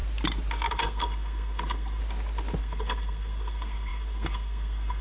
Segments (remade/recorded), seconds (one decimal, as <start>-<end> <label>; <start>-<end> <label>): 0.0-0.7 recorded; 0.7-2.0 remade; 2.0-2.6 recorded; 2.6-5.0 remade